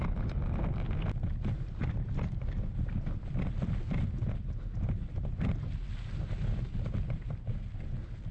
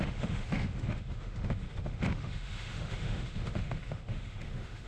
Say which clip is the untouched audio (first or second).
first